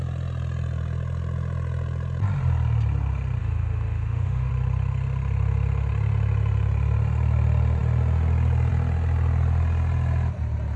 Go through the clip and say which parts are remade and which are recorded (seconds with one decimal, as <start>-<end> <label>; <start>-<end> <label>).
0.0-3.4 recorded; 3.4-4.5 remade; 4.5-10.8 recorded